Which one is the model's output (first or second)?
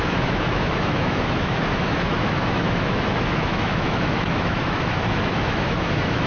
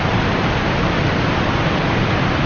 first